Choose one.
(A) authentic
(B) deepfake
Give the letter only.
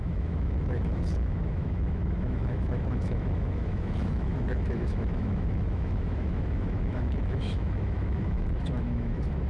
B